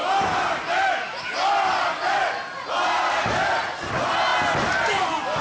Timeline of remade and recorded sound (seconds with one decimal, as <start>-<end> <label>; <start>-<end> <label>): 0.0-5.4 recorded